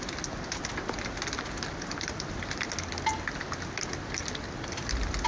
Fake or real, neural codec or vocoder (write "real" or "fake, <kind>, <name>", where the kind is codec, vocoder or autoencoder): real